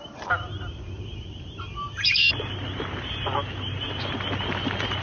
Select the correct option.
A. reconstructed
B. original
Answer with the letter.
B